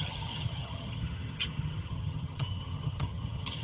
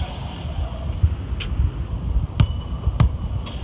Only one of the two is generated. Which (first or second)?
first